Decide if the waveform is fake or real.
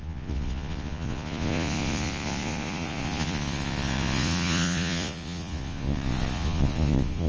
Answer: fake